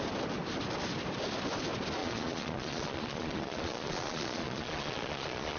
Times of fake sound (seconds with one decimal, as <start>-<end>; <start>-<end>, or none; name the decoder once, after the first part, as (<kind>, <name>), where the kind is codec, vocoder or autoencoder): 2.0-5.6 (vocoder, Vocos)